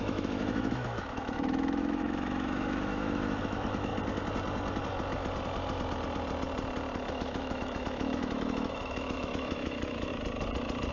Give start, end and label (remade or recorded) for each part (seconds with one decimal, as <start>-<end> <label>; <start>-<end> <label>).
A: 0.0-3.9 remade; 3.9-7.1 recorded; 7.1-10.1 remade; 10.1-10.9 recorded

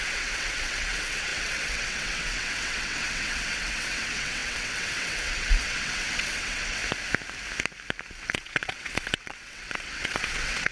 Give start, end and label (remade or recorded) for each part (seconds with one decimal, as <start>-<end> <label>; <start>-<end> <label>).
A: 0.0-6.8 remade; 6.8-8.1 recorded; 8.1-10.7 remade

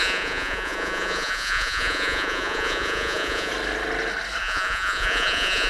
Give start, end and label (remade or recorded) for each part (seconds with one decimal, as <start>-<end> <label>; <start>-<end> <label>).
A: 0.0-3.5 remade; 3.5-4.4 recorded; 4.4-5.7 remade

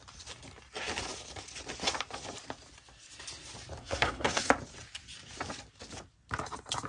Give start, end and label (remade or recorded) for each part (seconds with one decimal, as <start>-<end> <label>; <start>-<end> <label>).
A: 0.0-3.8 recorded; 3.8-4.5 remade; 4.5-6.9 recorded

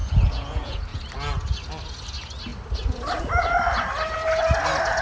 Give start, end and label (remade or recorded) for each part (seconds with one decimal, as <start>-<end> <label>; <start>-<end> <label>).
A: 0.0-1.0 remade; 1.0-5.0 recorded

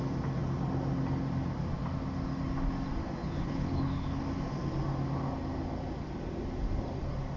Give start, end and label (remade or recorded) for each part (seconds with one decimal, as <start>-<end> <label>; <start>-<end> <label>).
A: 0.0-3.2 recorded; 3.2-4.2 remade; 4.2-7.4 recorded

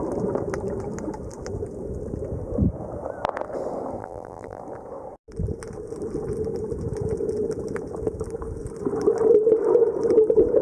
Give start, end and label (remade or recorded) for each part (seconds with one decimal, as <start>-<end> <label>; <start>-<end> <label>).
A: 0.0-4.0 recorded; 4.0-4.6 remade; 4.6-10.6 recorded